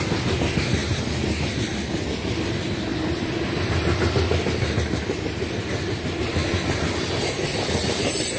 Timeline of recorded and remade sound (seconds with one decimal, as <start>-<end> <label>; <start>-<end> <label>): 0.0-8.4 recorded

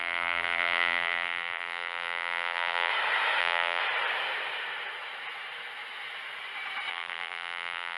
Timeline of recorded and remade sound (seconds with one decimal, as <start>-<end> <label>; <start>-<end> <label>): 0.0-2.9 remade; 2.9-3.4 recorded; 3.4-3.8 remade; 3.8-6.9 recorded; 6.9-8.0 remade

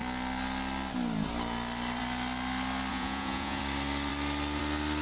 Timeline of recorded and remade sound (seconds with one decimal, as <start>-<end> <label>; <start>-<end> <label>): 0.0-2.9 recorded; 2.9-3.6 remade; 3.6-5.0 recorded